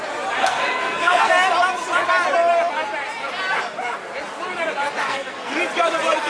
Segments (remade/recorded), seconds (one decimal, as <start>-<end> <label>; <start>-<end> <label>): 0.0-0.4 recorded; 0.4-1.3 remade; 1.3-5.0 recorded; 5.0-5.6 remade; 5.6-6.3 recorded